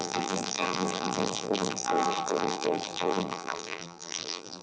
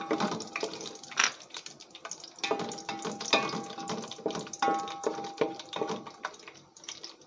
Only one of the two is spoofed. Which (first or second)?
first